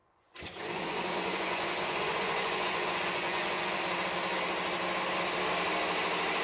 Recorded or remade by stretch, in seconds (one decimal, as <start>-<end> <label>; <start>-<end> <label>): 0.0-3.8 remade; 3.8-6.4 recorded